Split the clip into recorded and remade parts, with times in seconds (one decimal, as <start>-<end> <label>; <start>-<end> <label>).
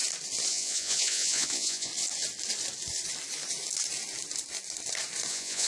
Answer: 0.0-0.5 recorded; 0.5-1.9 remade; 1.9-5.3 recorded; 5.3-5.7 remade